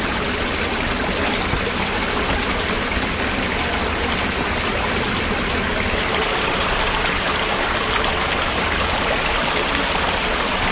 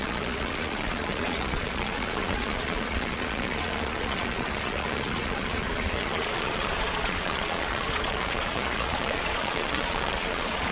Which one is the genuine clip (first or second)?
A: first